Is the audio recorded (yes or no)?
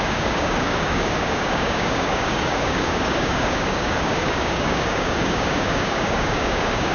no